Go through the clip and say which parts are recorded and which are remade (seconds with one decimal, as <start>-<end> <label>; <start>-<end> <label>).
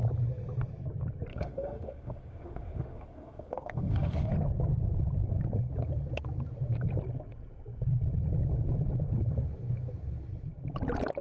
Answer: 0.0-1.3 recorded; 1.3-4.3 remade; 4.3-11.2 recorded